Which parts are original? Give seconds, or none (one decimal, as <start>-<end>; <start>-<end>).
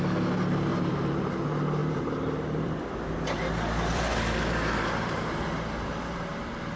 0.0-0.7; 1.3-1.8; 5.3-6.8